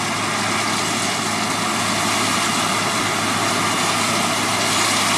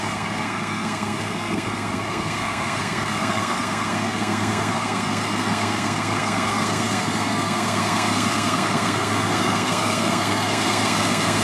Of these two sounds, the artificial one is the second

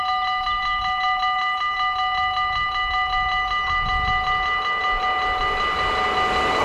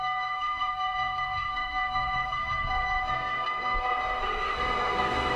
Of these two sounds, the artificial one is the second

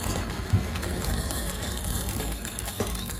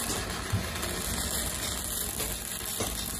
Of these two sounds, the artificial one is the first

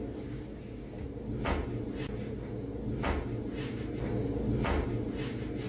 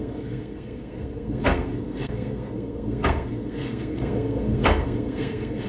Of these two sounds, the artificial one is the second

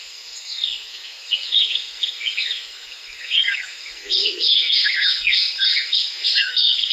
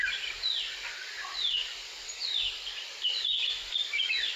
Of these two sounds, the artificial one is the first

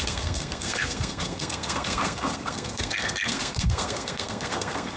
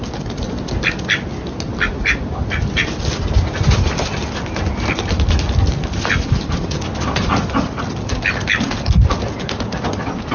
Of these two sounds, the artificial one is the first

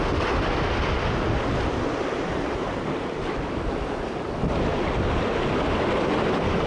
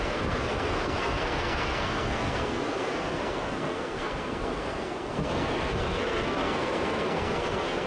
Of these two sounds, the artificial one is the second